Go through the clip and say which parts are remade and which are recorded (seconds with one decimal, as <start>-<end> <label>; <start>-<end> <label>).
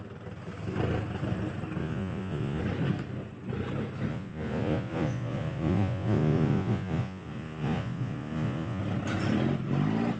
0.0-1.8 recorded; 1.8-2.6 remade; 2.6-4.1 recorded; 4.1-8.8 remade; 8.8-10.2 recorded